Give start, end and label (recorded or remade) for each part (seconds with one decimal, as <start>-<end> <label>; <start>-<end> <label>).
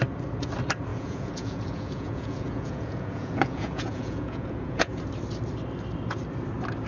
0.0-0.9 recorded; 0.9-5.0 remade; 5.0-6.9 recorded